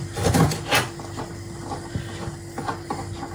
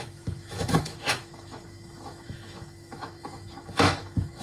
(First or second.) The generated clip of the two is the second